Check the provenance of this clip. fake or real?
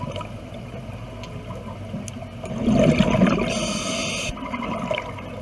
real